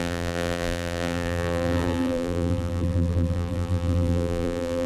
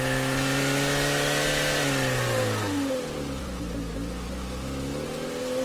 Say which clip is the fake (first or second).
first